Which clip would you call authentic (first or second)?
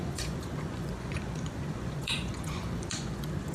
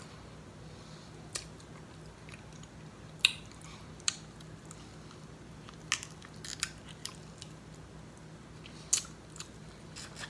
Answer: second